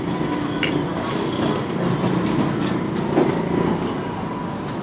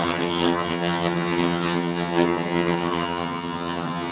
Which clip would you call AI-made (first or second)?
second